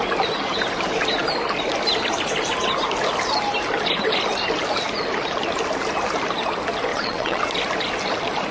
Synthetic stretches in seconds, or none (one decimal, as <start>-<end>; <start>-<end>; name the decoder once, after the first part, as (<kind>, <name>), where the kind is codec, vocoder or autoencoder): 6.9-7.4 (vocoder, WaveNeXt)